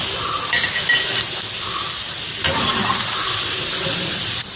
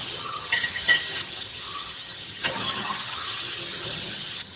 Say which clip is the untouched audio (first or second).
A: first